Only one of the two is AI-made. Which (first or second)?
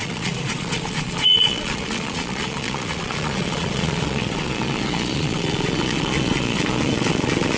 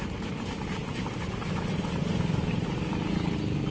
first